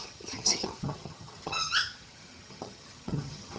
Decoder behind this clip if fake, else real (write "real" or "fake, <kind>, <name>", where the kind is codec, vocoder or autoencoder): fake, vocoder, HiFi-GAN